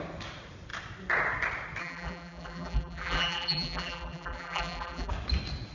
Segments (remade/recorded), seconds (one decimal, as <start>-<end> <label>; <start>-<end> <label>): 0.0-1.8 recorded; 1.8-5.1 remade; 5.1-5.7 recorded

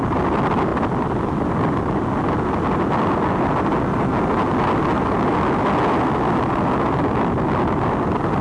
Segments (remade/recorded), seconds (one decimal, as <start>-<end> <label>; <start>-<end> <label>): 0.0-8.4 recorded

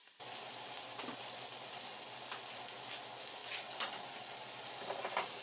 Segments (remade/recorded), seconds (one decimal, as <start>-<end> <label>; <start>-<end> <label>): 0.0-5.4 recorded